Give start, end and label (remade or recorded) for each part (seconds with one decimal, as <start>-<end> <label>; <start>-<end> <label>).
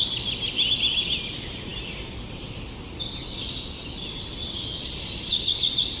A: 0.0-6.0 recorded